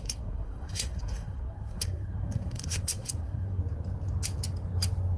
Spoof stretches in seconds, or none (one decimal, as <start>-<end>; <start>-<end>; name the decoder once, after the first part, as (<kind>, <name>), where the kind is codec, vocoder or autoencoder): 0.0-3.6 (codec, SNAC)